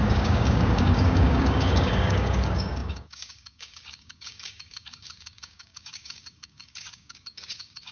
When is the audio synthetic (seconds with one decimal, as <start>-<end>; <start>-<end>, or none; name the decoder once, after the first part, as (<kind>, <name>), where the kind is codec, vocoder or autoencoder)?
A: 0.0-7.9 (codec, DAC)